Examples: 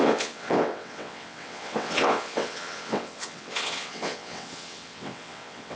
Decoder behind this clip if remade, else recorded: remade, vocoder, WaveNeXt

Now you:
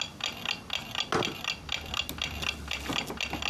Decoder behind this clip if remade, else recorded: recorded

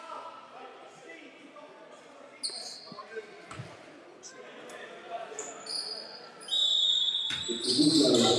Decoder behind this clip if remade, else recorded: recorded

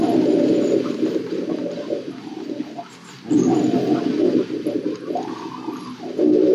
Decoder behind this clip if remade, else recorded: recorded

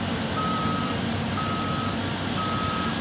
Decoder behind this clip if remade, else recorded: recorded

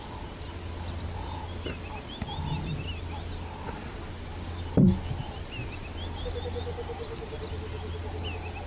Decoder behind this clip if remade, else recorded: recorded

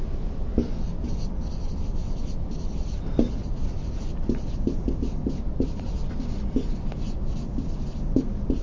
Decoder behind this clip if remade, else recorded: recorded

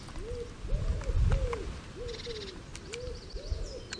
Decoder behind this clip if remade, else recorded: recorded